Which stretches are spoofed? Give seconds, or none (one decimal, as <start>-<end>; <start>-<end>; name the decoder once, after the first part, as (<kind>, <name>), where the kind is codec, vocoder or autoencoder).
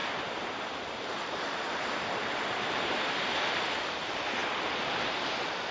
0.0-3.4 (vocoder, BigVGAN v2)